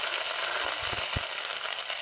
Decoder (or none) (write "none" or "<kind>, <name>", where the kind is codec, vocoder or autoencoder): none